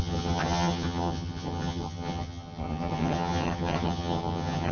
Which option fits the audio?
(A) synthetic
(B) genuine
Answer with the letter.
A